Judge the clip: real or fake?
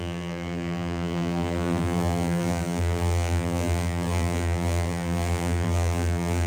fake